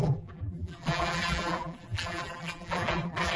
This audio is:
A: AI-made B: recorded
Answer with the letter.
A